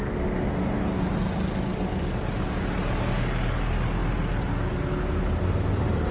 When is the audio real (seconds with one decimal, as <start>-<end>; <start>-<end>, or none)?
0.0-6.1